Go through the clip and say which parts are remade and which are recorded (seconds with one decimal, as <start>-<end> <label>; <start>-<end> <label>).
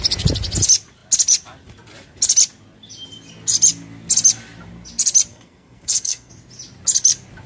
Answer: 0.0-5.3 recorded; 5.3-6.3 remade; 6.3-7.5 recorded